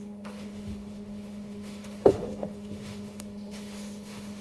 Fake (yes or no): yes